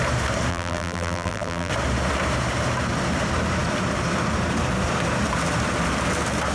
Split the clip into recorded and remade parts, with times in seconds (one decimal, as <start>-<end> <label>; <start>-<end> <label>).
0.0-0.5 recorded; 0.5-1.7 remade; 1.7-6.5 recorded